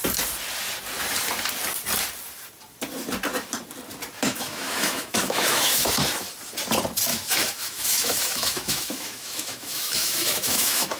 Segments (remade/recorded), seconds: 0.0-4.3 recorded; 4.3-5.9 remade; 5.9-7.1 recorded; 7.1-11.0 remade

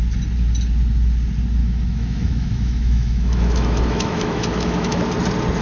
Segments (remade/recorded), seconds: 0.0-1.6 recorded; 1.6-5.0 remade; 5.0-5.6 recorded

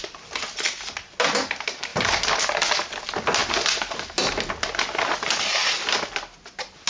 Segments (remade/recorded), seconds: 0.0-6.9 recorded

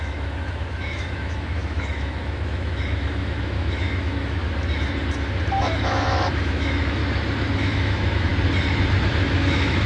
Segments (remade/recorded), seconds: 0.0-4.4 remade; 4.4-5.6 recorded; 5.6-7.0 remade; 7.0-7.6 recorded; 7.6-8.3 remade; 8.3-9.1 recorded; 9.1-9.9 remade

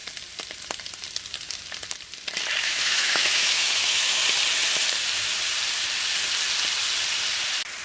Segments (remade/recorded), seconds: 0.0-2.6 recorded; 2.6-4.2 remade; 4.2-7.8 recorded

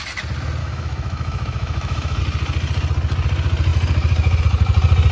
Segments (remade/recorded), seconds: 0.0-0.6 recorded; 0.6-2.2 remade; 2.2-5.1 recorded

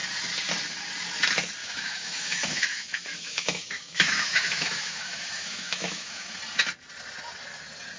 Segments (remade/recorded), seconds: 0.0-1.6 recorded; 1.6-6.4 remade; 6.4-8.0 recorded

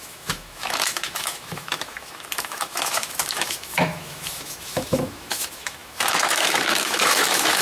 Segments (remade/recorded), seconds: 0.0-7.6 remade